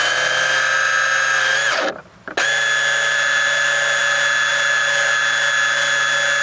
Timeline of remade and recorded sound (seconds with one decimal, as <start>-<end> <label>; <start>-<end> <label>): 0.0-6.4 recorded